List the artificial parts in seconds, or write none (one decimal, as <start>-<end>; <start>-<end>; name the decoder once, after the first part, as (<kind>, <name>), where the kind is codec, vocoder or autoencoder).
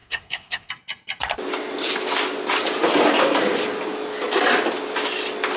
0.0-0.7 (codec, SNAC)